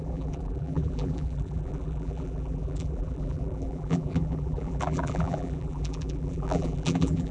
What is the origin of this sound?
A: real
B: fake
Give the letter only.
B